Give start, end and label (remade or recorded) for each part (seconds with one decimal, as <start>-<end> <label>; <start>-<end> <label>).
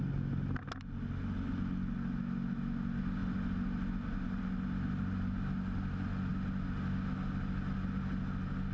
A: 0.0-8.7 recorded